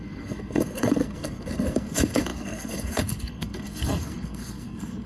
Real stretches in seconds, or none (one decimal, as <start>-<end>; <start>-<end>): none